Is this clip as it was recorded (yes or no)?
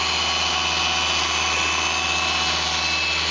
yes